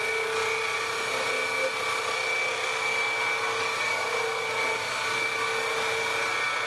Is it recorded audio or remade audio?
recorded